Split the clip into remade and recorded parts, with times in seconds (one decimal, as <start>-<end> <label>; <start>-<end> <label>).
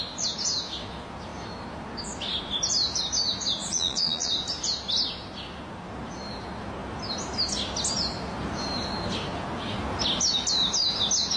0.0-3.6 recorded; 3.6-4.3 remade; 4.3-11.4 recorded